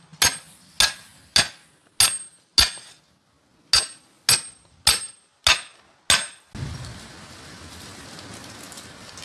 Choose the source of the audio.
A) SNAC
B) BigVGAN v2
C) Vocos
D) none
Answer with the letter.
D